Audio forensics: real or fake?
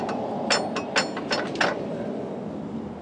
real